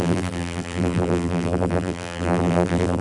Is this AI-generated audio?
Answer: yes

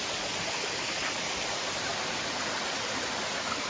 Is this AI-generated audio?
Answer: no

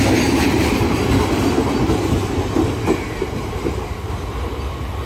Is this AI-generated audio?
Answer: yes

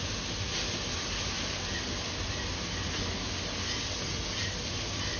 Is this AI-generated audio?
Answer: no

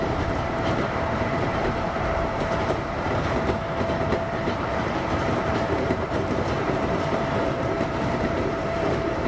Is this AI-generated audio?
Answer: yes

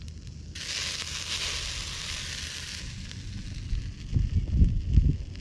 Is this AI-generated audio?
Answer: no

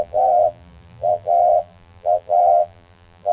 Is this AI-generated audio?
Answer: yes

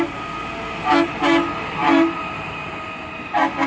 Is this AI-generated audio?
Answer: no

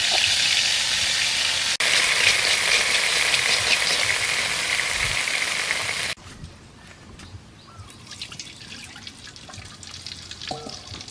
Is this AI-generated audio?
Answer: no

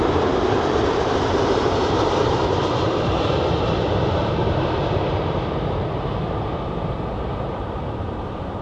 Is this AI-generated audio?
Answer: yes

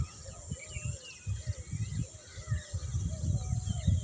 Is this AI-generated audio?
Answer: no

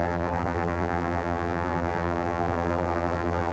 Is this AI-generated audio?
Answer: yes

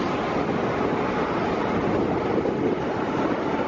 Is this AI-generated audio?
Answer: no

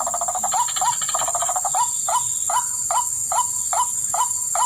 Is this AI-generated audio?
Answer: no